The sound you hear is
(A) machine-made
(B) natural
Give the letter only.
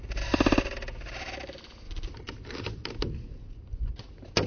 B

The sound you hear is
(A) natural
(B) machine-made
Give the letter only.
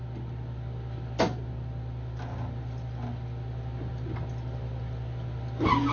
A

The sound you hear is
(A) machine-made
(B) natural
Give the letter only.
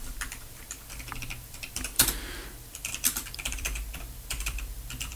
A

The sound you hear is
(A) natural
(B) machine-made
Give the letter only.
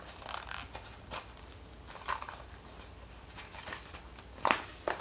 A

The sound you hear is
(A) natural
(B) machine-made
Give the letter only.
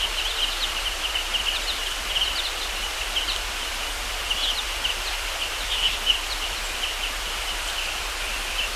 A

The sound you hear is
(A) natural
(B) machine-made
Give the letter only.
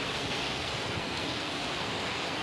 B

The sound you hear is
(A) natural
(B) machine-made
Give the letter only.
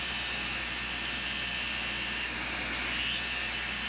A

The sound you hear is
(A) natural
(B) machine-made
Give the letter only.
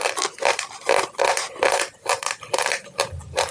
B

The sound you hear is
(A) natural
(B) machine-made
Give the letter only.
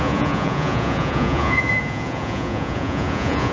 B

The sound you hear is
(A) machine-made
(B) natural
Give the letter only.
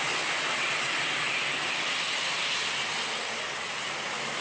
B